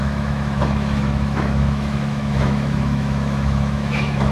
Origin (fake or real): fake